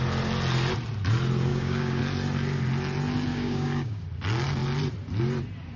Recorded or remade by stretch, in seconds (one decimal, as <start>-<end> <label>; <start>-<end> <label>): 0.0-1.5 recorded; 1.5-2.0 remade; 2.0-3.3 recorded; 3.3-4.0 remade; 4.0-5.8 recorded